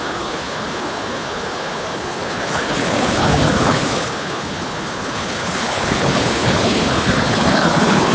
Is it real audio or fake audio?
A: fake